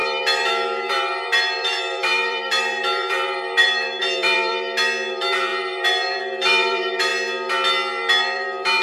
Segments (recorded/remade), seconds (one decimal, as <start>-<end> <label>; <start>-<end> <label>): 0.0-4.5 remade; 4.5-5.1 recorded; 5.1-7.1 remade; 7.1-8.2 recorded; 8.2-8.8 remade